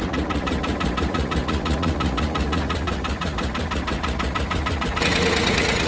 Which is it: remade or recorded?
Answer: remade